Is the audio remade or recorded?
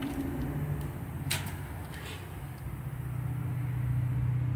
recorded